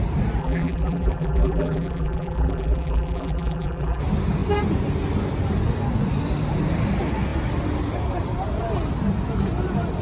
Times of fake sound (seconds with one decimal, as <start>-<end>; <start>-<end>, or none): 0.4-4.0